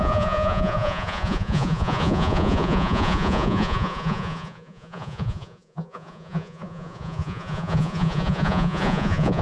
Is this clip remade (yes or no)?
yes